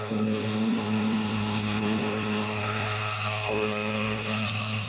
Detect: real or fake fake